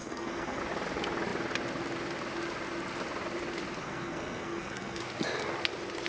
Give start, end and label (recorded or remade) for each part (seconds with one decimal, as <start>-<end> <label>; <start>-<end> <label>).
0.0-0.6 remade; 0.6-3.8 recorded; 3.8-5.0 remade; 5.0-6.1 recorded